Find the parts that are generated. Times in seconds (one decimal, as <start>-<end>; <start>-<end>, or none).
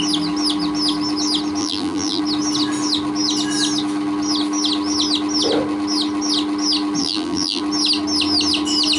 1.6-2.2; 7.0-7.6